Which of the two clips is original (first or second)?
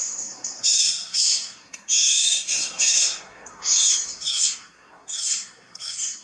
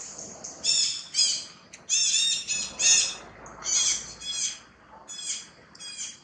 second